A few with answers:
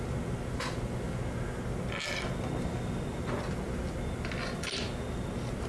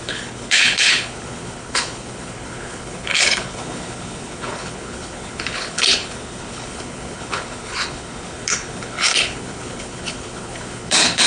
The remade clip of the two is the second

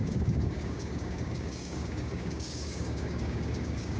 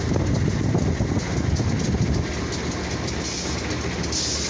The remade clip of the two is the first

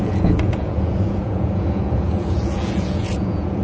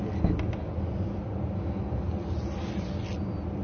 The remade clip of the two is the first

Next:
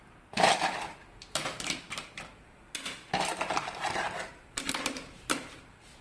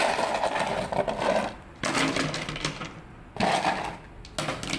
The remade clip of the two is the first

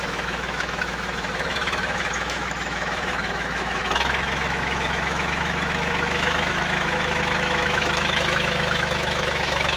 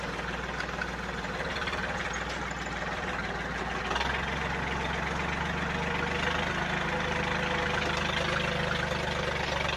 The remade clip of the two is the first